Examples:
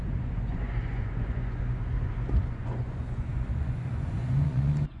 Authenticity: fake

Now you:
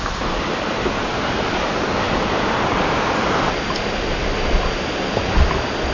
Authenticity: real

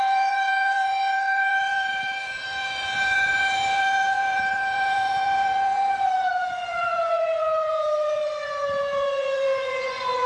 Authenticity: fake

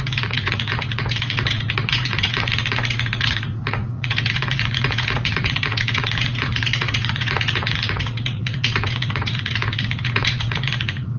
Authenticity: fake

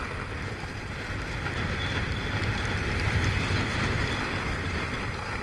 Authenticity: real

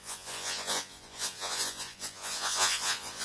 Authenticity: fake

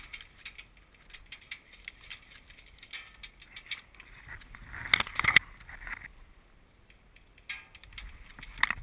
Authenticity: real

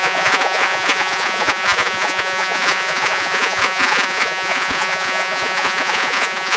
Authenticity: fake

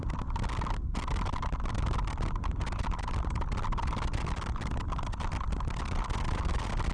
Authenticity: real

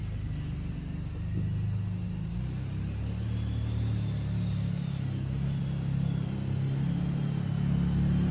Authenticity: real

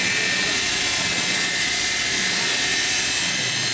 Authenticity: fake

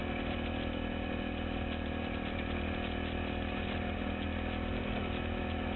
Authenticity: real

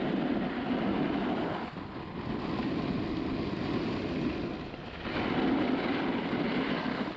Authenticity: real